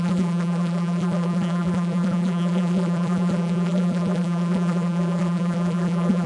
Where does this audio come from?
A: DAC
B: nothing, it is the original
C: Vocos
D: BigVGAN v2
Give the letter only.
D